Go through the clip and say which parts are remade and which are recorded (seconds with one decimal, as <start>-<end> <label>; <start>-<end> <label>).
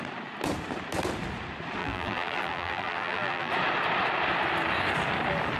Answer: 0.0-1.8 recorded; 1.8-3.5 remade; 3.5-5.6 recorded